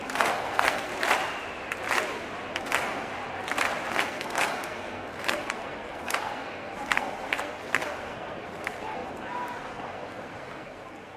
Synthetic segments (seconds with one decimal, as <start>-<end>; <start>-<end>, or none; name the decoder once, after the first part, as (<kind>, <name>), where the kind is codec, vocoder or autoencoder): 0.0-0.9 (codec, SNAC); 2.6-3.1; 3.9-11.2